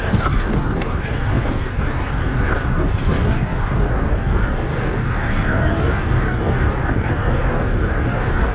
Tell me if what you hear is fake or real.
fake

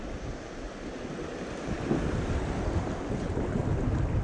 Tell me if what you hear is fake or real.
real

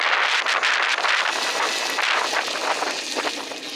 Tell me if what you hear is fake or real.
real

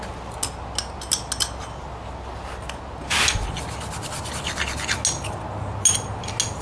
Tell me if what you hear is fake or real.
real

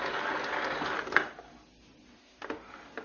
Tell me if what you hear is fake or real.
real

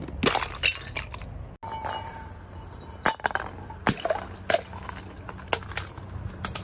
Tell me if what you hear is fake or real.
real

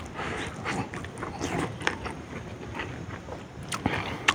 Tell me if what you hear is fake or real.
real